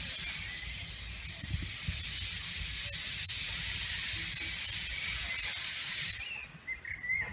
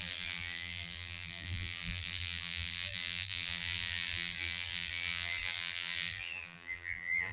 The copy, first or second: second